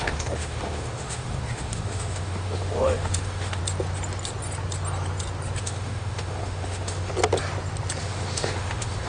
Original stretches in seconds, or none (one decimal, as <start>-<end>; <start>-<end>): 3.6-5.6; 7.1-8.0